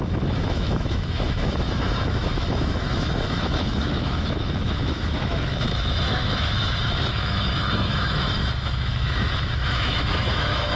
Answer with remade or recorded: remade